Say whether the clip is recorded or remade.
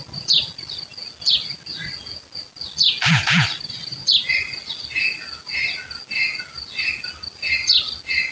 recorded